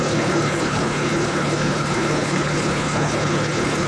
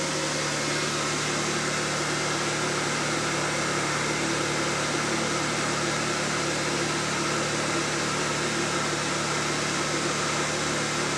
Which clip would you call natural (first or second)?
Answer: second